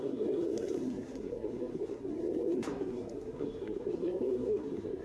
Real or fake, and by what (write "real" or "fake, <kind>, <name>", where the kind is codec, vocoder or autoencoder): fake, codec, SNAC